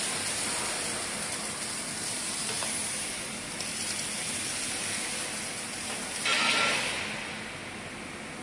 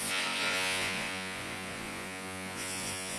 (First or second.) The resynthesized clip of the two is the second